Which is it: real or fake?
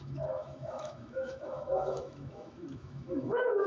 fake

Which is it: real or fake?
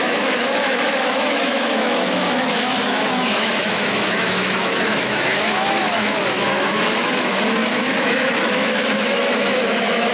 fake